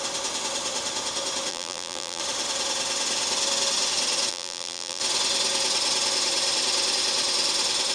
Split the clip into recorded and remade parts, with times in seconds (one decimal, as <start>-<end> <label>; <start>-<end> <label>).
0.0-1.5 recorded; 1.5-2.2 remade; 2.2-4.3 recorded; 4.3-5.0 remade; 5.0-7.9 recorded